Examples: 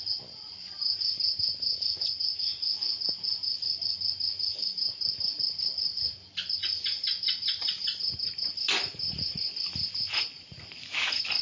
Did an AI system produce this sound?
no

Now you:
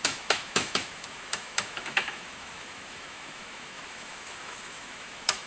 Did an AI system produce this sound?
yes